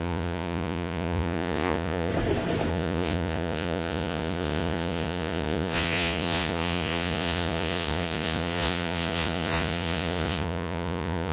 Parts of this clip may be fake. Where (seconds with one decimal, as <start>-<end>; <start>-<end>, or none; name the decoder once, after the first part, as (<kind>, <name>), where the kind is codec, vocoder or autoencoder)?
0.0-2.1 (vocoder, Vocos); 2.7-11.3